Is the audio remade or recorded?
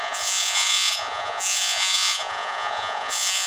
remade